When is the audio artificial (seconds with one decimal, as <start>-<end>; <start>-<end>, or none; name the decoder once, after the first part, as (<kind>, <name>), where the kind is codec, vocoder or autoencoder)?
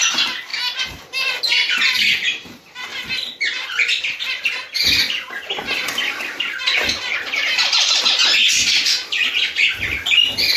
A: 2.9-8.0 (vocoder, BigVGAN v2)